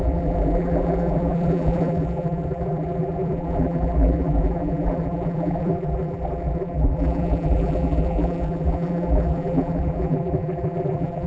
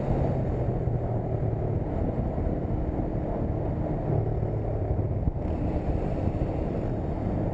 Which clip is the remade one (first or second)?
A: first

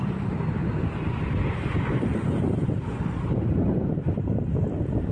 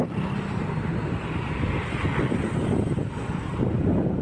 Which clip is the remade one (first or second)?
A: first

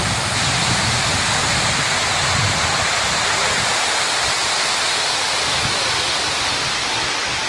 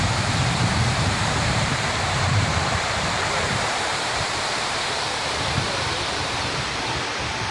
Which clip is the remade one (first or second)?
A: second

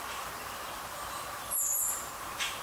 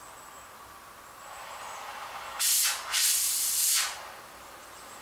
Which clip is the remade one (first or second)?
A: first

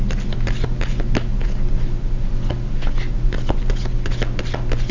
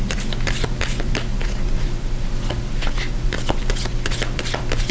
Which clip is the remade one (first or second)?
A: second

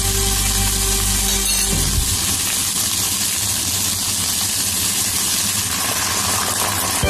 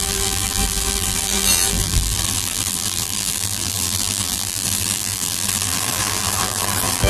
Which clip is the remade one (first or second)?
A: second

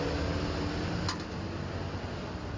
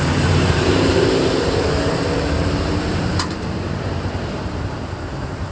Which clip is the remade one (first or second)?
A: second